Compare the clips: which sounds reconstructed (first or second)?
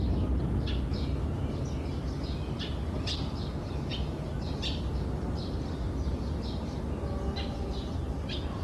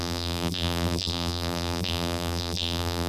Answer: second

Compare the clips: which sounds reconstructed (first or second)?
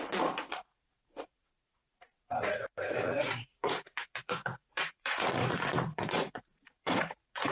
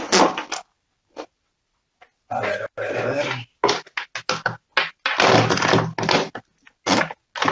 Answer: first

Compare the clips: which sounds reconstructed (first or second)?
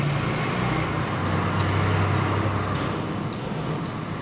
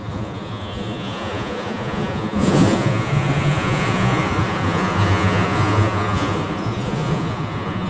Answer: second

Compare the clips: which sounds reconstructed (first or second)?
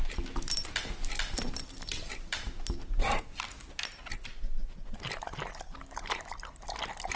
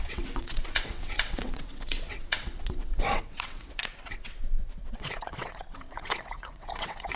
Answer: second